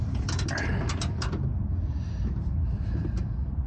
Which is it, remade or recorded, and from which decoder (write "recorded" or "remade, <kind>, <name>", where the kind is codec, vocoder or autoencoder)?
recorded